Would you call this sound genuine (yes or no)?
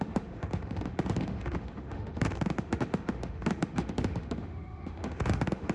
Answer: no